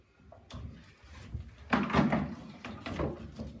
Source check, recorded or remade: recorded